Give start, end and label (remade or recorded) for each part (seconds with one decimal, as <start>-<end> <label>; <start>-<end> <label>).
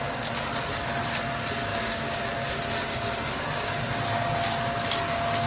0.0-1.7 recorded; 1.7-2.2 remade; 2.2-5.5 recorded